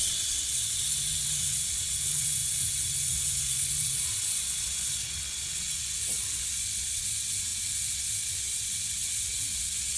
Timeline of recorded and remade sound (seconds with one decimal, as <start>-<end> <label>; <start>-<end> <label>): 0.0-10.0 remade